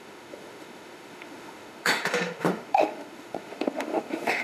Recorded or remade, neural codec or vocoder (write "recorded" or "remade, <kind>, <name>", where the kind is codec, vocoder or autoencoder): remade, autoencoder, DAC-VAE